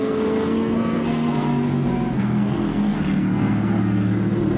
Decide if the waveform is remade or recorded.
remade